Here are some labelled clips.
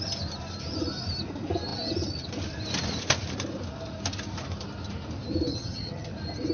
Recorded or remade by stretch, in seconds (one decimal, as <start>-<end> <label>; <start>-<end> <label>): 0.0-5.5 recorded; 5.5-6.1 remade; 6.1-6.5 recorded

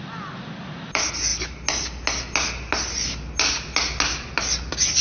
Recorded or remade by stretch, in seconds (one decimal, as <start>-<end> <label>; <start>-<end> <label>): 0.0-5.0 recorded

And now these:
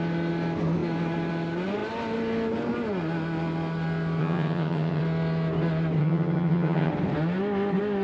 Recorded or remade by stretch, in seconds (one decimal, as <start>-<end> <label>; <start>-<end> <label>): 0.0-4.2 recorded; 4.2-5.0 remade; 5.0-6.0 recorded; 6.0-6.9 remade; 6.9-8.0 recorded

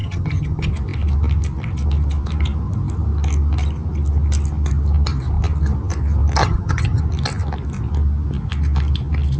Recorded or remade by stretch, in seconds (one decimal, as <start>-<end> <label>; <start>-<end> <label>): 0.0-0.7 remade; 0.7-6.4 recorded; 6.4-7.0 remade; 7.0-9.4 recorded

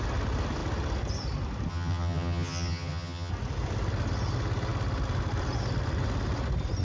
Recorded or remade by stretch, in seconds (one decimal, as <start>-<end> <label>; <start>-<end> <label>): 0.0-1.7 recorded; 1.7-3.3 remade; 3.3-6.8 recorded

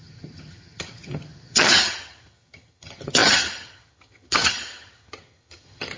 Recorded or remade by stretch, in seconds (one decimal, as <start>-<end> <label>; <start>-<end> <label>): 0.0-6.0 remade

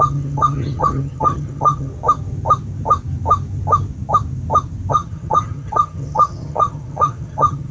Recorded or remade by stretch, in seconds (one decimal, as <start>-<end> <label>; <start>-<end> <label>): 0.0-1.9 remade; 1.9-4.9 recorded; 4.9-7.7 remade